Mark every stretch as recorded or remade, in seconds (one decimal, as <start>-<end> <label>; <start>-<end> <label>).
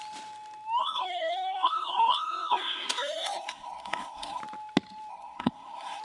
0.0-0.8 recorded; 0.8-4.4 remade; 4.4-5.1 recorded; 5.1-6.0 remade